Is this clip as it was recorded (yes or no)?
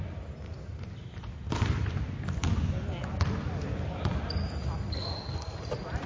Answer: yes